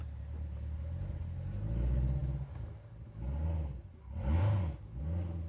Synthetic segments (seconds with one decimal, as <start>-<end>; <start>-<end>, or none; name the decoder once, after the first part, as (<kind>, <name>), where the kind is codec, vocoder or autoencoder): none